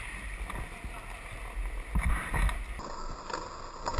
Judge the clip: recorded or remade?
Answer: recorded